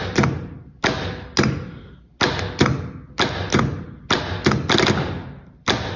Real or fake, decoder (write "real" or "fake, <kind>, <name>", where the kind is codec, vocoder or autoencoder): real